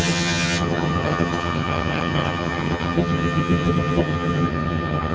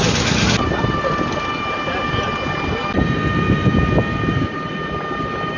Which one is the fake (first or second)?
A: first